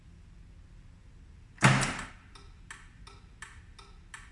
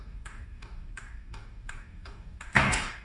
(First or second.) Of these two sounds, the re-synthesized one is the second